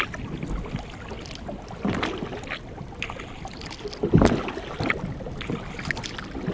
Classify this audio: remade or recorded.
recorded